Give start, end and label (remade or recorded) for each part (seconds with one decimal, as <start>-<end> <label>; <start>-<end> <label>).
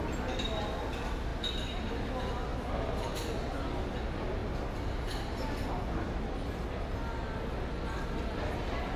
0.0-9.0 recorded